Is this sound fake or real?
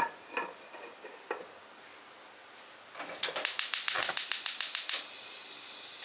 real